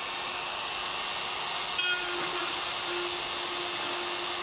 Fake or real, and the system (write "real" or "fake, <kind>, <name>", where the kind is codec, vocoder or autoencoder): real